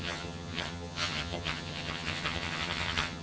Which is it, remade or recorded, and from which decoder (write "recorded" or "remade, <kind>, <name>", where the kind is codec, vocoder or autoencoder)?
remade, vocoder, HiFi-GAN